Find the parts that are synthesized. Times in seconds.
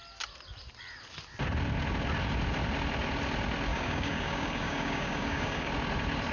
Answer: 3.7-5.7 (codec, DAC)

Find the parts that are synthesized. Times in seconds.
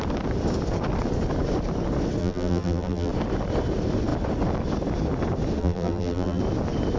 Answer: 2.2-3.1 (vocoder, BigVGAN v2); 5.6-6.4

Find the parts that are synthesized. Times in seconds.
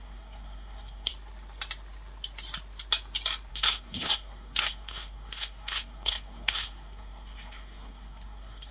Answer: 0.0-1.1 (codec, SNAC); 3.5-8.7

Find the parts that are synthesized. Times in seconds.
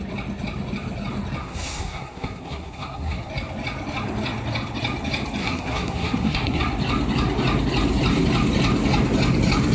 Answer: 1.4-3.3 (codec, SNAC); 5.4-6.6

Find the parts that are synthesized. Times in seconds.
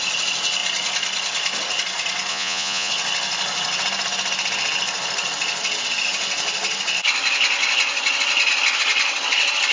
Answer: 2.3-2.9 (vocoder, Vocos)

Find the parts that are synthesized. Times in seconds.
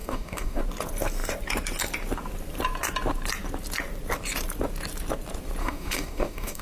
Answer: 0.0-0.6 (codec, DAC); 5.6-6.6